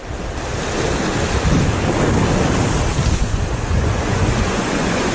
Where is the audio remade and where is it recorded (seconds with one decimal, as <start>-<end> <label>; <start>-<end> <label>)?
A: 0.0-3.1 recorded; 3.1-5.1 remade